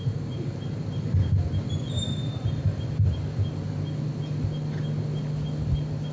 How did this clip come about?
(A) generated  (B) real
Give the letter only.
B